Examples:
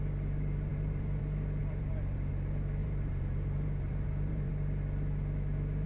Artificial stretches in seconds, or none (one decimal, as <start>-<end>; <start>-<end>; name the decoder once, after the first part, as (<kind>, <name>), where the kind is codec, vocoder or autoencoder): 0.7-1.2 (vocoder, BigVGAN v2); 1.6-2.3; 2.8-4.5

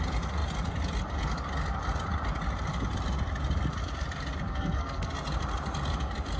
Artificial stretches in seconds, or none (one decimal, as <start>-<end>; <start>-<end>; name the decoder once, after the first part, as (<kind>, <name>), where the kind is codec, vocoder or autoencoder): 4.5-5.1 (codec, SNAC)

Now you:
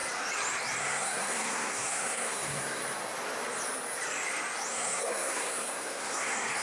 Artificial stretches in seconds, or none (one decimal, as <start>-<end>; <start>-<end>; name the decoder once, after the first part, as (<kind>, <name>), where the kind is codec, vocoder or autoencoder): 0.8-2.8 (codec, SNAC); 4.7-6.6

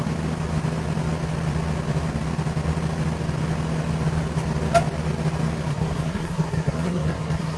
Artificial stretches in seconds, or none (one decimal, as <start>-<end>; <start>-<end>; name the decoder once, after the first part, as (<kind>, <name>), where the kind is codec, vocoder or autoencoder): 5.7-7.6 (codec, SNAC)

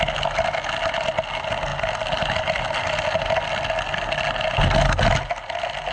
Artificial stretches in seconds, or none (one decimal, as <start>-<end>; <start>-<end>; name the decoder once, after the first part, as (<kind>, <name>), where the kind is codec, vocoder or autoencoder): none